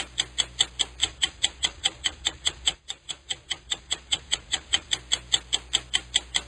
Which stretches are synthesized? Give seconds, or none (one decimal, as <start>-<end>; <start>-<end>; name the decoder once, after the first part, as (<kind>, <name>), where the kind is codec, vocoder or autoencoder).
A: 1.0-4.9 (vocoder, Vocos)